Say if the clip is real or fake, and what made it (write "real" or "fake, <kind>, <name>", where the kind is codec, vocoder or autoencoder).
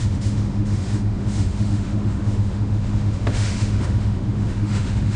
fake, autoencoder, DAC-VAE